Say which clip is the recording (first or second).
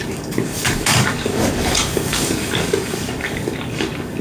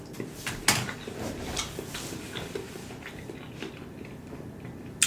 second